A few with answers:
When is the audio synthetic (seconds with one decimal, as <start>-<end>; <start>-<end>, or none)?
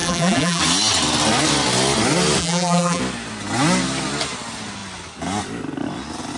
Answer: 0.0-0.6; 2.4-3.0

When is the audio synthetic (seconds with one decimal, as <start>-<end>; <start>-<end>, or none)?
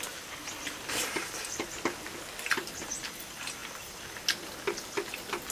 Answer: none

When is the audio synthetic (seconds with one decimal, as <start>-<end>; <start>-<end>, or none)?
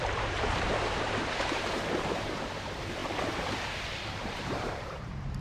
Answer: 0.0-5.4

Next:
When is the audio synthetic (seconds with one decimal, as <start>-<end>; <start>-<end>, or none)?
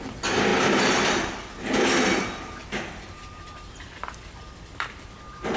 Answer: 0.0-0.5; 1.5-5.6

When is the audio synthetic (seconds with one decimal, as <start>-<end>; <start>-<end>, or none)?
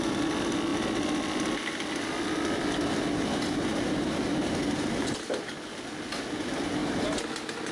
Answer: 3.7-5.5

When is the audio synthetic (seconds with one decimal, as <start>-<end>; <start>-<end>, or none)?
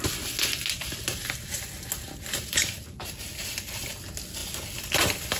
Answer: none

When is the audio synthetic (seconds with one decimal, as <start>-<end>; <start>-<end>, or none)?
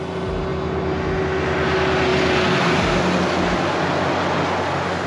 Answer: none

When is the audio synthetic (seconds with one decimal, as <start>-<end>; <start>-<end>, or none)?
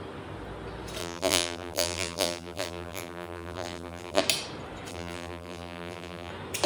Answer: 1.0-4.2; 4.9-6.3